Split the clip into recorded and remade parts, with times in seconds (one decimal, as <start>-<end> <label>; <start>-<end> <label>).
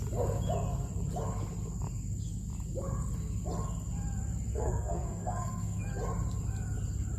0.0-4.5 recorded; 4.5-5.8 remade; 5.8-7.2 recorded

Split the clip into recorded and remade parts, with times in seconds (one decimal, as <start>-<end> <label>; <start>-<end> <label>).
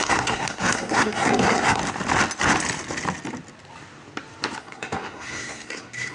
0.0-1.8 remade; 1.8-4.6 recorded; 4.6-6.1 remade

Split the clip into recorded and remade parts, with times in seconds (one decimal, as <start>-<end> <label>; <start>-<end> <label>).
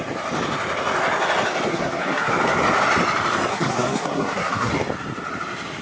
0.0-1.7 recorded; 1.7-2.3 remade; 2.3-3.5 recorded; 3.5-4.7 remade; 4.7-5.8 recorded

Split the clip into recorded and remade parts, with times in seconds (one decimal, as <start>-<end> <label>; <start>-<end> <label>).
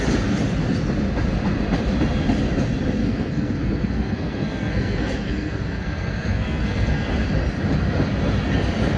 0.0-3.0 recorded; 3.0-7.1 remade; 7.1-9.0 recorded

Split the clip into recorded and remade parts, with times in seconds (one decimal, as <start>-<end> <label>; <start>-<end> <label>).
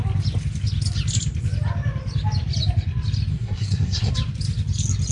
0.0-3.3 recorded; 3.3-4.1 remade; 4.1-5.1 recorded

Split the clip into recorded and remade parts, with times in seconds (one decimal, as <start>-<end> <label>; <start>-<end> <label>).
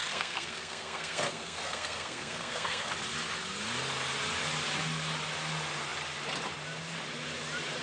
0.0-2.9 remade; 2.9-7.8 recorded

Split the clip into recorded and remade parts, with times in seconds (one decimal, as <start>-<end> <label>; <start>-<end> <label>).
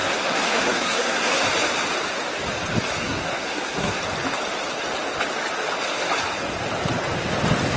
0.0-1.4 remade; 1.4-3.0 recorded; 3.0-4.0 remade; 4.0-7.8 recorded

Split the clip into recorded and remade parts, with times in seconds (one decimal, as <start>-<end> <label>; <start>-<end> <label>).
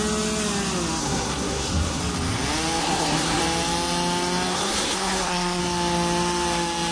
0.0-1.0 recorded; 1.0-2.0 remade; 2.0-2.8 recorded; 2.8-3.4 remade; 3.4-4.5 recorded; 4.5-5.6 remade; 5.6-6.9 recorded